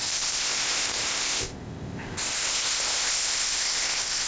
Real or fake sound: fake